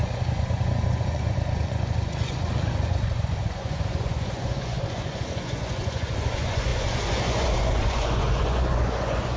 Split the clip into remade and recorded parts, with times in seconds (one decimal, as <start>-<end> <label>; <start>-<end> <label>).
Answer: 0.0-9.4 remade